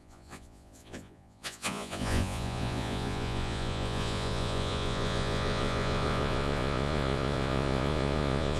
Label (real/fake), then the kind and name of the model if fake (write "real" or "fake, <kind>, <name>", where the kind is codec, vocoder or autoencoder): fake, vocoder, Vocos